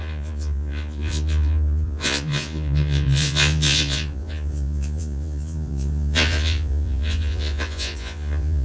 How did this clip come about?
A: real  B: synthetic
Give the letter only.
B